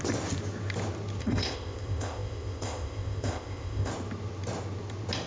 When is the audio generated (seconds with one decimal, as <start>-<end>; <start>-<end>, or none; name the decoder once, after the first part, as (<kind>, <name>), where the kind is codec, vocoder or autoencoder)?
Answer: 1.2-3.9 (codec, ZipCodec)